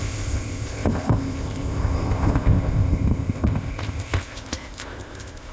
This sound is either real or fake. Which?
fake